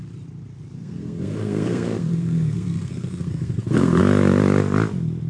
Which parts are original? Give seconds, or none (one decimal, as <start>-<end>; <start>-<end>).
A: 0.0-0.8; 4.0-5.3